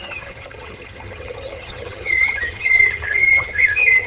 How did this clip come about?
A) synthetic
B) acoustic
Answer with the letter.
A